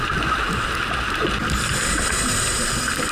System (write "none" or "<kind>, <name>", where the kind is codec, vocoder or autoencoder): none